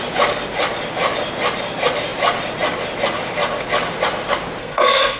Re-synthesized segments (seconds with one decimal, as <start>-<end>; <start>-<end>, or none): 4.6-5.2